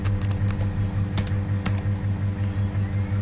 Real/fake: real